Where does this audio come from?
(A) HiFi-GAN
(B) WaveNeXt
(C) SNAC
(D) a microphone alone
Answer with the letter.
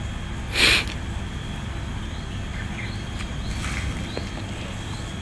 D